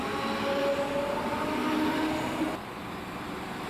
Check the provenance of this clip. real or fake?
real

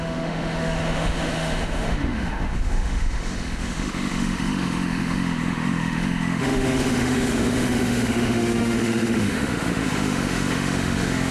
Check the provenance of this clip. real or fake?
fake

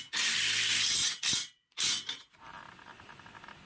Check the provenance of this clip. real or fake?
real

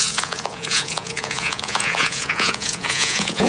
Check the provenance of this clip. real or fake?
fake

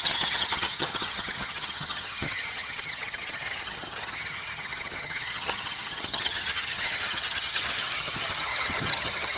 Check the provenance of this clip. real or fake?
fake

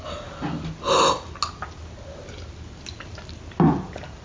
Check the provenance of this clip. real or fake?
real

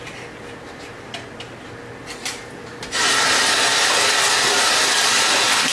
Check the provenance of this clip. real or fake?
real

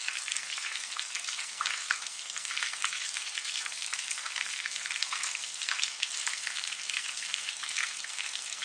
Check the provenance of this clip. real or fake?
fake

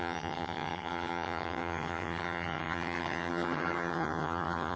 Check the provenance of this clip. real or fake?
fake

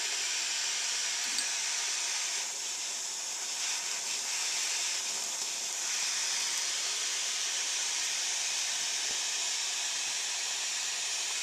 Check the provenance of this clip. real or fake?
fake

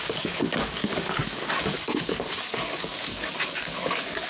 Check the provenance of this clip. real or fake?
fake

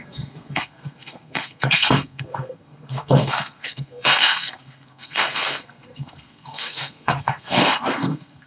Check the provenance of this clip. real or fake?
fake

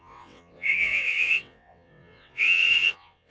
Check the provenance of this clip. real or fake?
fake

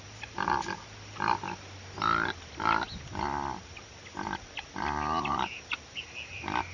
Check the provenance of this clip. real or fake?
real